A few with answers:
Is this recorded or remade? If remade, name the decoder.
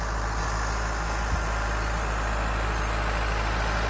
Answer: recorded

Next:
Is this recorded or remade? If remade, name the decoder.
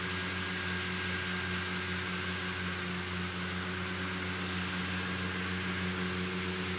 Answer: recorded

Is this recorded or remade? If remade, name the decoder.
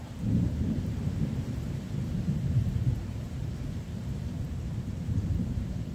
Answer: remade, vocoder, BigVGAN v2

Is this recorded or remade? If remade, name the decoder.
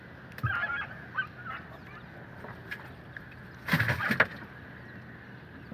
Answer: recorded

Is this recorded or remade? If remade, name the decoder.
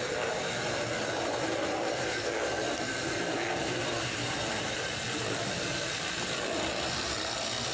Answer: remade, vocoder, BigVGAN v2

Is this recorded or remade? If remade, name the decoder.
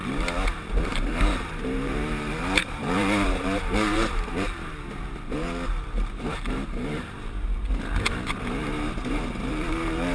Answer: remade, vocoder, BigVGAN v2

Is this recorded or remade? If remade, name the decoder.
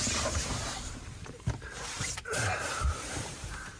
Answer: remade, vocoder, BigVGAN v2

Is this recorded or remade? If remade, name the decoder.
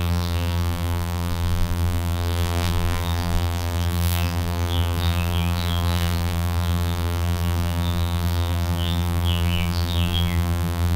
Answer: remade, vocoder, BigVGAN v2